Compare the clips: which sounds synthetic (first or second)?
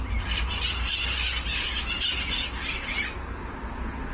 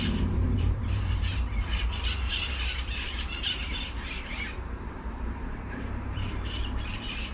second